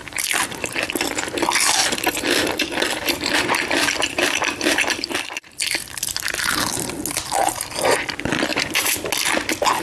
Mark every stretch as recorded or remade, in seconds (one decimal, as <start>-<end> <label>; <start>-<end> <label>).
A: 0.0-0.9 remade; 0.9-1.8 recorded; 1.8-6.2 remade; 6.2-8.5 recorded; 8.5-9.1 remade; 9.1-9.8 recorded